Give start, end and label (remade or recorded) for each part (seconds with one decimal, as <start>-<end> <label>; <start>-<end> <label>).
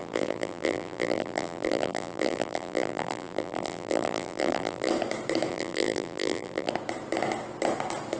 0.0-4.9 remade; 4.9-5.5 recorded; 5.5-6.7 remade; 6.7-8.2 recorded